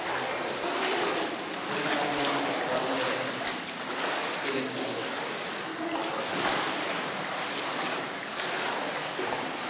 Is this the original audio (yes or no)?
yes